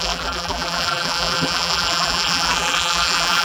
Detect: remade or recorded remade